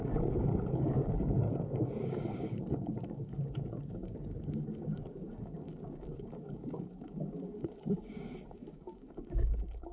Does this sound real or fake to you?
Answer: fake